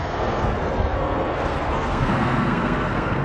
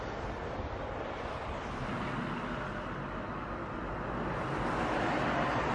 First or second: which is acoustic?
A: second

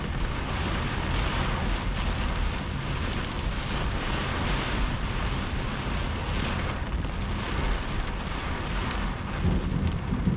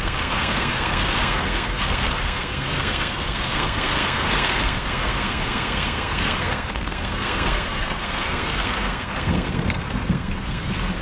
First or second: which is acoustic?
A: first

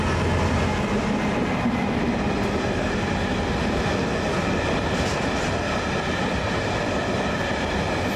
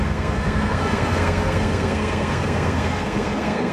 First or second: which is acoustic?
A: first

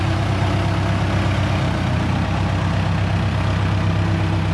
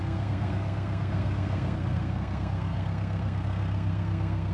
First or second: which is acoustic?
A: first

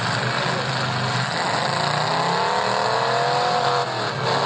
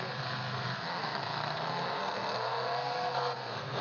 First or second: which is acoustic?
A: first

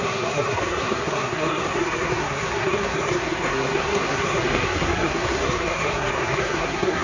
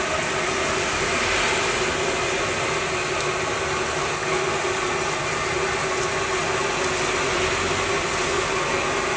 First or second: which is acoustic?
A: second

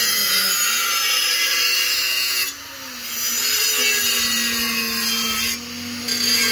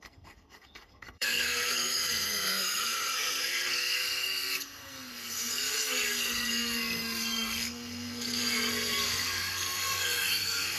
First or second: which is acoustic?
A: first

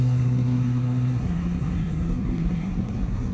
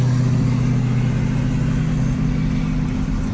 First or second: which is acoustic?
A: second